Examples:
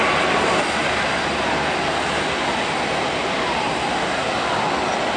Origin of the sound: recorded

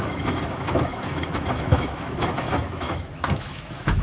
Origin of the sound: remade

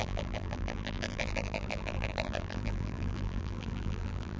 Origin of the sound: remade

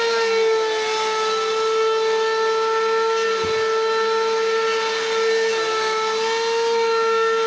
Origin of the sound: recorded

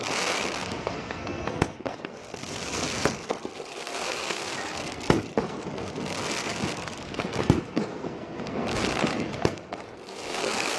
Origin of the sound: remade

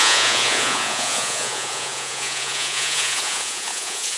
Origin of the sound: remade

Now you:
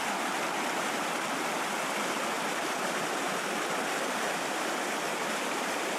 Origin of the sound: recorded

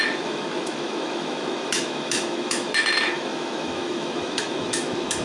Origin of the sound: remade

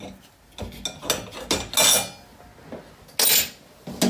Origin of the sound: recorded